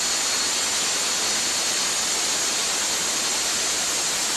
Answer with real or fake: real